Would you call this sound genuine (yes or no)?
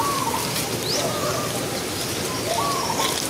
yes